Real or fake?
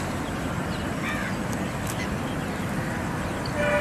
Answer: real